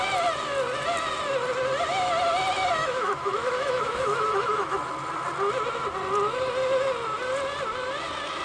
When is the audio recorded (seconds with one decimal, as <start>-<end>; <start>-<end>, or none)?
0.0-2.8; 4.9-8.4